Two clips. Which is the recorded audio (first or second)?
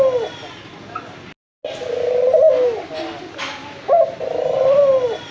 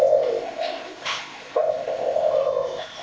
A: first